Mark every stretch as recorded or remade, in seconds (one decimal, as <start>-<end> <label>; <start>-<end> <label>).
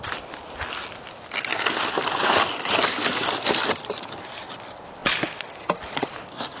0.0-6.6 recorded